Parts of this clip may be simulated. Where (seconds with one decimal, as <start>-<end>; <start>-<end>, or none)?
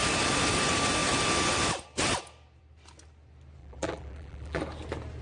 3.6-4.6